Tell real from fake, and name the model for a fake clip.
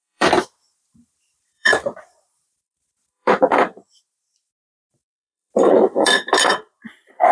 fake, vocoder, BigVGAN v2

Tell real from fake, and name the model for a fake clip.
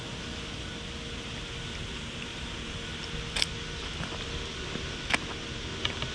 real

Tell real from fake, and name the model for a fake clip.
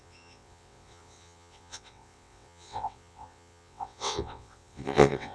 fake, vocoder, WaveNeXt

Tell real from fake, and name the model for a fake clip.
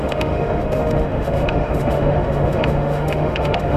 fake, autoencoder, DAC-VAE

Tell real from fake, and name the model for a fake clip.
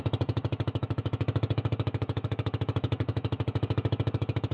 fake, autoencoder, DAC-VAE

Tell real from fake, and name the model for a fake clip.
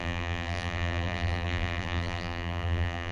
fake, vocoder, BigVGAN v2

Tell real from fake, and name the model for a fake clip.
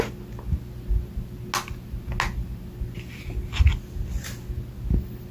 real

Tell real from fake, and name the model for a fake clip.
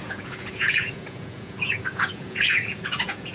fake, vocoder, Vocos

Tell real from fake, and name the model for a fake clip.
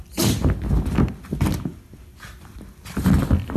real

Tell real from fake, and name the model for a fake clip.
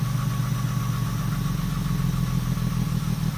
real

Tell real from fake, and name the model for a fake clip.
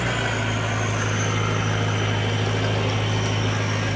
real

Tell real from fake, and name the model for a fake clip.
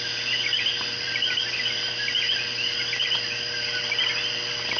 fake, vocoder, BigVGAN v2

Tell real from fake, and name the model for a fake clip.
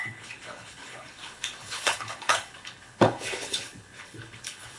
fake, codec, HILCodec